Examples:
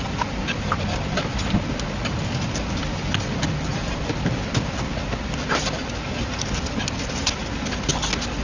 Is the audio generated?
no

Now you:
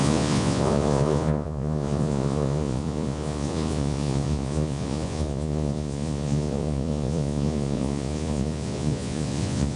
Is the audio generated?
yes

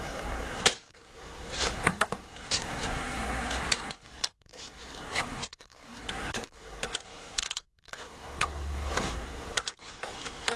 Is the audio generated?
yes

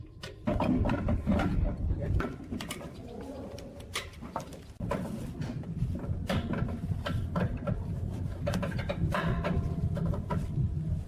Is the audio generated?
no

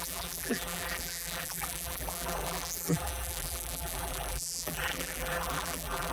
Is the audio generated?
yes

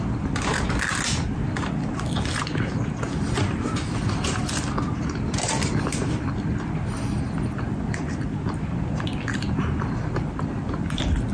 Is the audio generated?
no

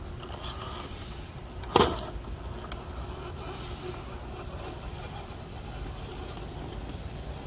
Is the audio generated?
no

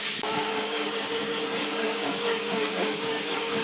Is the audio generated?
yes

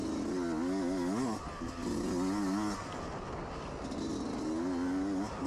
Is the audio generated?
no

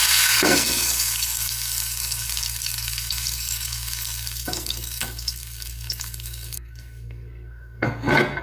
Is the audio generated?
yes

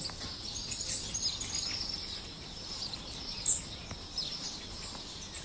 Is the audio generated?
no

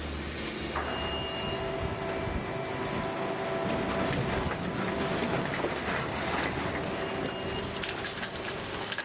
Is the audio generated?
no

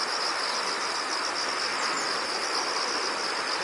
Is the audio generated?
no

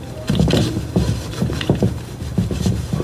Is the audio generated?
yes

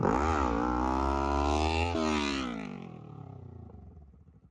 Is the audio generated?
no